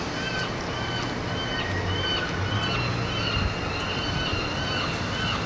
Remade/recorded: recorded